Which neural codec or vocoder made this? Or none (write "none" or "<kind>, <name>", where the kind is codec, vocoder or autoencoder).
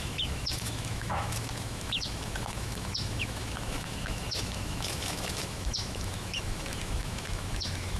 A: autoencoder, DAC-VAE